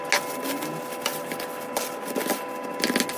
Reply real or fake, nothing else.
real